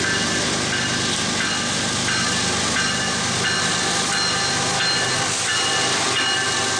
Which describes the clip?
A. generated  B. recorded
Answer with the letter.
B